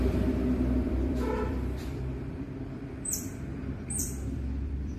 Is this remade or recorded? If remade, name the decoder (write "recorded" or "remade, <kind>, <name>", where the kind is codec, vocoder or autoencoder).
remade, vocoder, BigVGAN v2